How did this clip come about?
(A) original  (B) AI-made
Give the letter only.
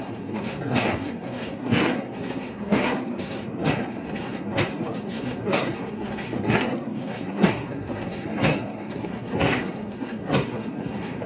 B